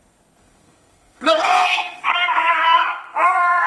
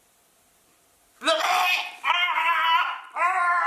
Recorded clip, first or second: second